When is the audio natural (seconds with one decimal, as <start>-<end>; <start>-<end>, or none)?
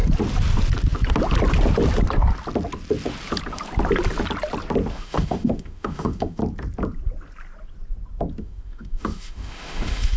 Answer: 0.0-4.9; 6.4-8.4